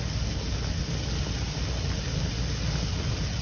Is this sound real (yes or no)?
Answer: yes